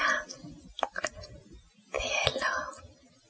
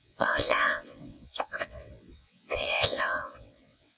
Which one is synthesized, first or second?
second